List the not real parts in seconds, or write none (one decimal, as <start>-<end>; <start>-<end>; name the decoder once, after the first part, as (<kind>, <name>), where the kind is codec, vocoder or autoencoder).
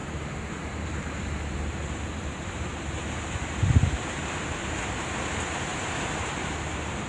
0.0-7.1 (vocoder, BigVGAN v2)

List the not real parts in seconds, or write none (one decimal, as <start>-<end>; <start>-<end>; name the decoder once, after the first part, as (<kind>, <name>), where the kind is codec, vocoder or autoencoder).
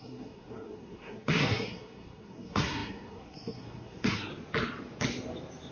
0.0-4.3 (codec, SNAC)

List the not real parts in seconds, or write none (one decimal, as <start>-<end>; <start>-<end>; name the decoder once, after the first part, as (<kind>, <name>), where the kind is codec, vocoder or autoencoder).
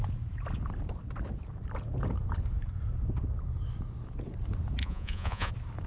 4.8-5.5 (vocoder, Vocos)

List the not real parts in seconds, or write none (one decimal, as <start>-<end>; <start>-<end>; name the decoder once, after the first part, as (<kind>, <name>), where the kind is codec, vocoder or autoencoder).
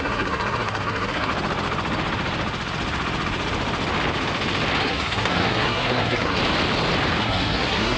0.0-1.3 (codec, SNAC); 4.8-6.4; 7.2-8.0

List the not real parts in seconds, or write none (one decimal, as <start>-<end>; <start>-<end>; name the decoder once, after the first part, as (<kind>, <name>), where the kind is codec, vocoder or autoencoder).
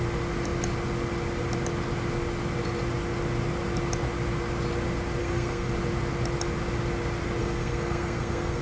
5.2-5.7 (codec, SNAC); 7.4-8.6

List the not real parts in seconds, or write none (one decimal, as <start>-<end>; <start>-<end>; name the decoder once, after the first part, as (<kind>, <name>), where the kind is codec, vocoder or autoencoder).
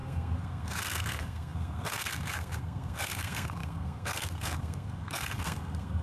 0.0-6.0 (codec, SNAC)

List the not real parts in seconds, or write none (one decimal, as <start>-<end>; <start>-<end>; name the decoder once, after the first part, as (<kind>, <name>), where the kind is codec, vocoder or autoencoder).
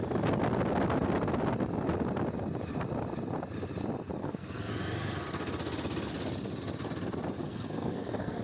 4.2-4.7 (codec, SNAC); 7.4-8.4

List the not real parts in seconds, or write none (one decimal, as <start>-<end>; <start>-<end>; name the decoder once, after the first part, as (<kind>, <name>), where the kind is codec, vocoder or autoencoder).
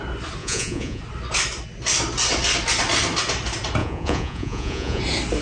0.4-1.0 (vocoder, Vocos); 3.8-5.0